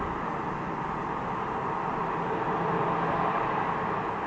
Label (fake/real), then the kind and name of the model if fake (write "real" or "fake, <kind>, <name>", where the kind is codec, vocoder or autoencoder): real